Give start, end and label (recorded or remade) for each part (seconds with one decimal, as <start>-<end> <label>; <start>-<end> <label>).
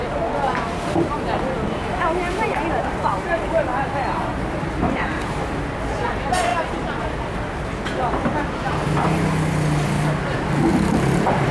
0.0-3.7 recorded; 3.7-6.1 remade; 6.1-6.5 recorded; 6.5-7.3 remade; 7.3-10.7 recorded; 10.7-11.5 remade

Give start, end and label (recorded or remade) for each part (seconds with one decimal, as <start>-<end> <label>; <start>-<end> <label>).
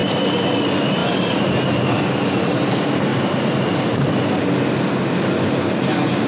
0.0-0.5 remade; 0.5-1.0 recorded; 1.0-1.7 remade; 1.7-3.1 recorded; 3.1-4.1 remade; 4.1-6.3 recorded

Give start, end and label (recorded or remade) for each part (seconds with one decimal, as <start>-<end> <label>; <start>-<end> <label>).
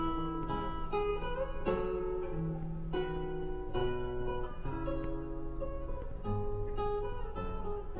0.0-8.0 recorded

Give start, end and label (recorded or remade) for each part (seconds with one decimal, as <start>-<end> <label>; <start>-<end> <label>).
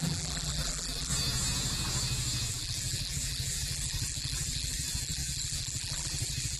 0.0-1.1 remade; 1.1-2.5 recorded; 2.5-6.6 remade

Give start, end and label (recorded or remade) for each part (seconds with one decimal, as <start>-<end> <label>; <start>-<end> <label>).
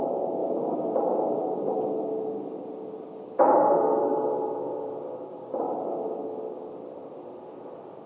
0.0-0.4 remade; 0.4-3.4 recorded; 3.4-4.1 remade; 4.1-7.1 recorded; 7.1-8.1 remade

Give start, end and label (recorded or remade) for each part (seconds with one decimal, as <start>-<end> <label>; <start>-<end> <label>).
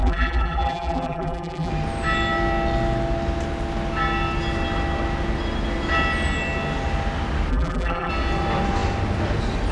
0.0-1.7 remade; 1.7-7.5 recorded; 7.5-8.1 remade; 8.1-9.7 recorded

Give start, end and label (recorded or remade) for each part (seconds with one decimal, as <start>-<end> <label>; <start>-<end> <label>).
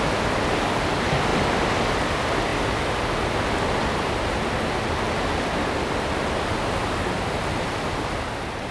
0.0-8.7 recorded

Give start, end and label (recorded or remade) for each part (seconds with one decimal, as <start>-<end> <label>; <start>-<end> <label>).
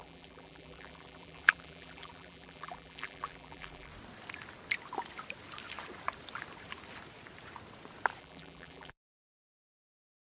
0.0-3.9 remade; 3.9-8.2 recorded; 8.2-10.4 remade